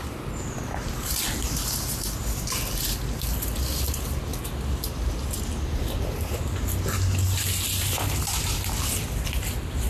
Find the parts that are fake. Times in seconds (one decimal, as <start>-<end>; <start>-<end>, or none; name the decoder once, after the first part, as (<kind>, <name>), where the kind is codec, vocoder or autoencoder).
none